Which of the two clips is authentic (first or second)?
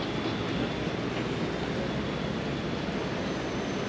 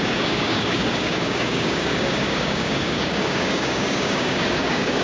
first